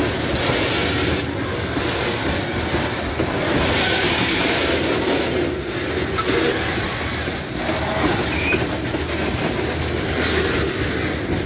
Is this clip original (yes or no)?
yes